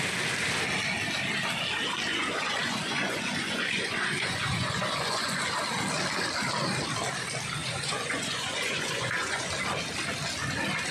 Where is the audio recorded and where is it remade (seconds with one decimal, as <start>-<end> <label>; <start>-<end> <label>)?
0.0-2.1 recorded; 2.1-5.4 remade; 5.4-7.6 recorded; 7.6-9.5 remade; 9.5-10.9 recorded